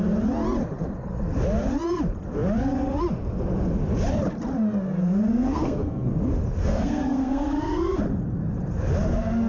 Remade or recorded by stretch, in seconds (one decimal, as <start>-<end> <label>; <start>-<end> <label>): 0.0-5.3 recorded; 5.3-6.1 remade; 6.1-6.6 recorded; 6.6-8.0 remade; 8.0-9.5 recorded